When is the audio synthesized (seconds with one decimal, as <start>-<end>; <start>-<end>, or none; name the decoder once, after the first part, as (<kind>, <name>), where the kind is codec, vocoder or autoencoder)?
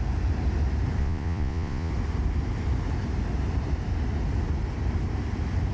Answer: 1.0-1.9 (vocoder, Vocos)